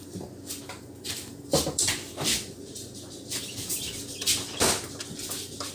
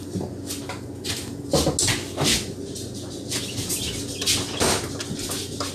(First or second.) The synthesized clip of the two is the first